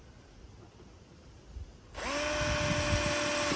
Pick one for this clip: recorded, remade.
recorded